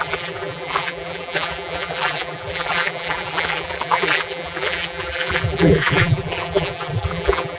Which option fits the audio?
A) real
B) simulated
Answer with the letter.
B